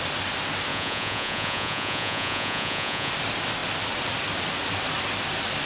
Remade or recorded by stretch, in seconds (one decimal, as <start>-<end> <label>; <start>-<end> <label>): 0.0-0.7 recorded; 0.7-3.1 remade; 3.1-5.7 recorded